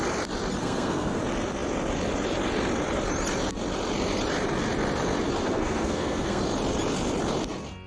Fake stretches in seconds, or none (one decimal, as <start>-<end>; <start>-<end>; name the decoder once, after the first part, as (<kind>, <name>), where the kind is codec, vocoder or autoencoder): 0.6-1.2 (codec, SNAC); 5.4-6.4